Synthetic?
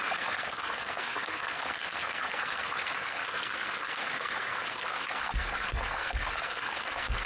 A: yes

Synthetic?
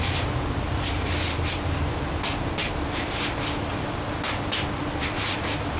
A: no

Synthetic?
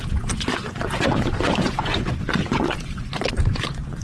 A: yes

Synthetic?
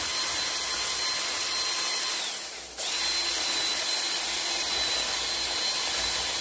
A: no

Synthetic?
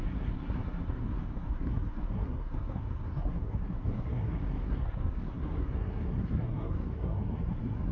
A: yes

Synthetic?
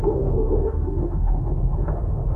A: yes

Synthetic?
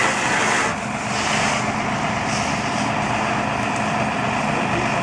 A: no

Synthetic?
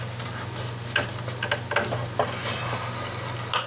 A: no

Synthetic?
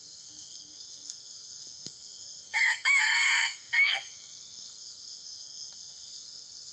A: yes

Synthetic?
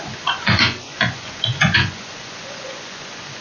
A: yes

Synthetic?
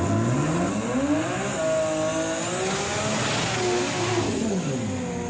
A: no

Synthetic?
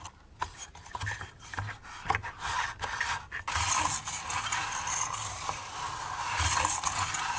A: no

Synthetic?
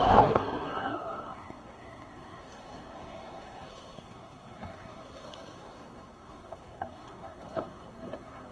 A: yes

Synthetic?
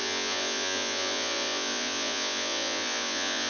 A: yes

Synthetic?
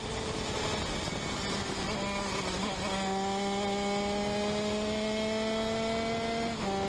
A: no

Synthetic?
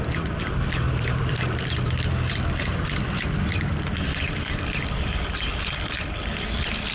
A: yes